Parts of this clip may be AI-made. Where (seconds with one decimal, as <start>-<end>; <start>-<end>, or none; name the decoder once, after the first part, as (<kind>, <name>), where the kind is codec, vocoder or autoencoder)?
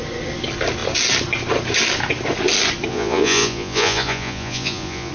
2.9-5.1 (vocoder, Vocos)